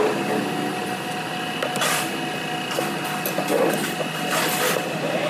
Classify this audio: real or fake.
real